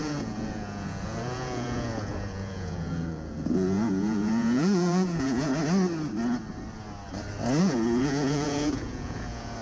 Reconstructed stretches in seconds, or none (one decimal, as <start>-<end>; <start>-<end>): 0.0-5.5; 7.6-9.6